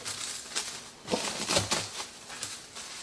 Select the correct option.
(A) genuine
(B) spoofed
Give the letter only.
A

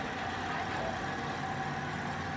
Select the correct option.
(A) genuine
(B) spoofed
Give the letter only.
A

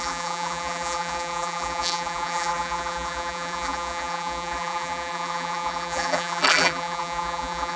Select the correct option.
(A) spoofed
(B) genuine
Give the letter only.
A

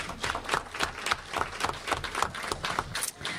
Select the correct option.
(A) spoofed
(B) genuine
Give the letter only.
B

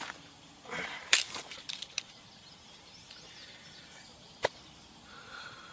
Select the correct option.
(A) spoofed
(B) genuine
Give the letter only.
A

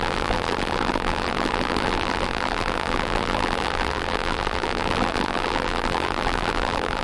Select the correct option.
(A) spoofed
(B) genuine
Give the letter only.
A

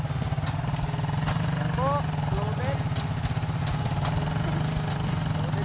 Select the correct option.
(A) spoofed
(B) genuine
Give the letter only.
B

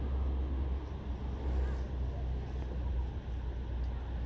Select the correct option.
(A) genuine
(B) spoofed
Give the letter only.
A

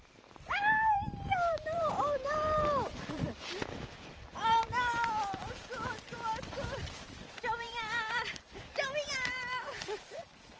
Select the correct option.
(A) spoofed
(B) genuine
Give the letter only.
A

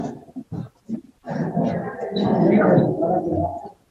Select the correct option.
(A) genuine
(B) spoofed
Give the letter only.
A